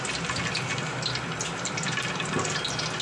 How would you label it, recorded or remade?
recorded